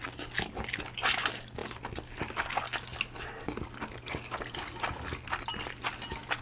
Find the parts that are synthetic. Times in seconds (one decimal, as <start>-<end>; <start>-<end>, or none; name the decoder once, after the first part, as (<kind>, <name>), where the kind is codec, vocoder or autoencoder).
none